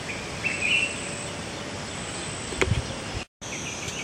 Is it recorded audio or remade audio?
recorded